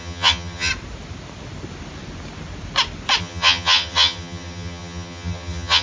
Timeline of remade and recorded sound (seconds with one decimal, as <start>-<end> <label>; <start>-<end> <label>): 0.0-0.7 remade; 0.7-3.2 recorded; 3.2-5.8 remade